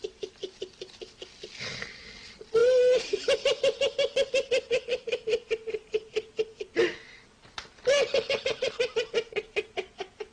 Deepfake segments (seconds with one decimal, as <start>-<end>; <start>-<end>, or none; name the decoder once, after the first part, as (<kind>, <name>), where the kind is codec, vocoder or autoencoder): none